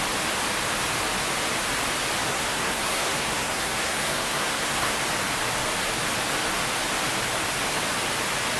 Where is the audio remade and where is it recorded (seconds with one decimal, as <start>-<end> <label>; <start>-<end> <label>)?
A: 0.0-2.3 recorded; 2.3-5.0 remade; 5.0-8.6 recorded

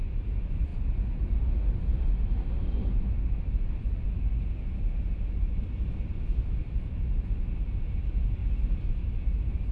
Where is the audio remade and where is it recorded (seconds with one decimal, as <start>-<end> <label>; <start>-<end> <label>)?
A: 0.0-9.7 recorded